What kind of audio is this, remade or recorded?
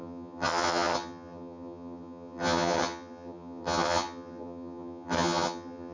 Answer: remade